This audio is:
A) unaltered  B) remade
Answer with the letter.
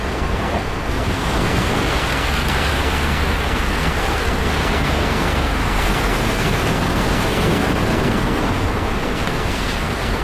B